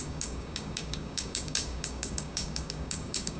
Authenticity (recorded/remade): remade